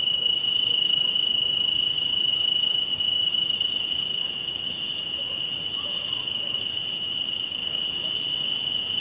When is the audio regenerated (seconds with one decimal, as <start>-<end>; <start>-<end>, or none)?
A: 0.0-9.0